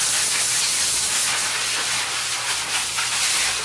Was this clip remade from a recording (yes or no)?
no